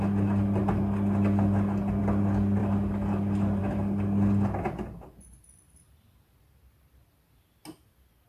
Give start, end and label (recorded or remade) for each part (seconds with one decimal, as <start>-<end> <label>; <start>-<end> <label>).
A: 0.0-8.3 recorded

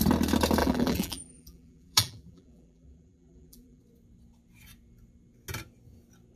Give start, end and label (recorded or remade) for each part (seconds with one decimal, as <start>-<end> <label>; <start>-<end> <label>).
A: 0.0-0.6 recorded; 0.6-3.8 remade; 3.8-6.4 recorded

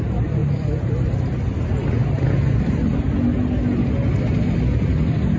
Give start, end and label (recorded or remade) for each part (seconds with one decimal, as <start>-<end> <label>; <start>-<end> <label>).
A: 0.0-0.4 recorded; 0.4-1.6 remade; 1.6-2.0 recorded; 2.0-3.0 remade; 3.0-5.4 recorded